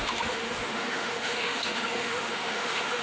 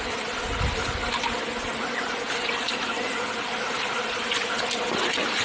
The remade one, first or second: first